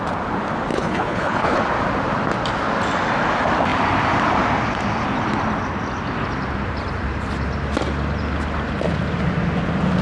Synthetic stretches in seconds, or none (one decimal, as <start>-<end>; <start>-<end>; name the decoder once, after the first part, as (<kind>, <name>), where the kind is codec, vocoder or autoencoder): 0.7-1.6 (codec, HILCodec)